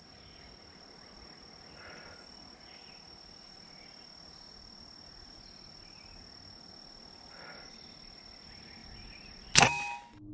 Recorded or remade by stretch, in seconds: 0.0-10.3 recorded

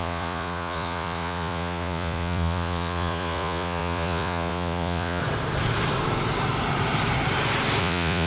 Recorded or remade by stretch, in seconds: 0.0-5.2 remade; 5.2-7.8 recorded; 7.8-8.3 remade

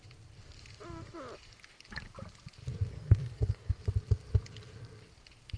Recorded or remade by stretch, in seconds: 0.0-2.9 recorded; 2.9-3.8 remade; 3.8-5.6 recorded

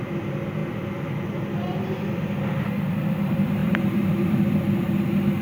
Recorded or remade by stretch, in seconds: 0.0-3.6 recorded; 3.6-4.4 remade; 4.4-5.4 recorded